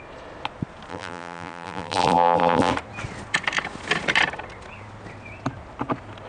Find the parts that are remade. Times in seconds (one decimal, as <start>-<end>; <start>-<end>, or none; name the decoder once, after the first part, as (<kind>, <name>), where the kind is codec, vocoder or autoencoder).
0.9-2.7 (vocoder, BigVGAN v2)